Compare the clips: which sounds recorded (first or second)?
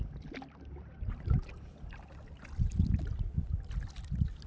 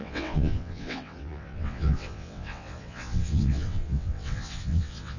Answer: first